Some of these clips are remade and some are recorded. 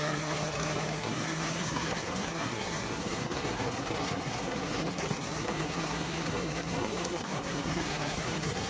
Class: remade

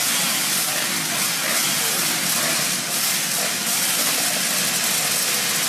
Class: recorded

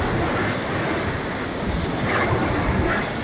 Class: recorded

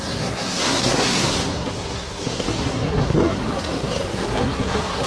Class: remade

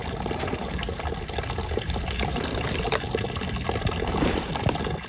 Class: recorded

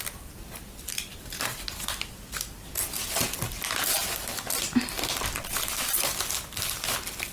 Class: recorded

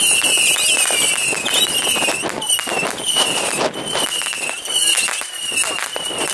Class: recorded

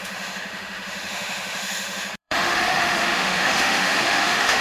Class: remade